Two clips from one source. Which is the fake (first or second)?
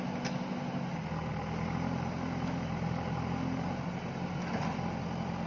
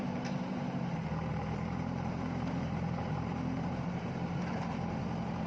second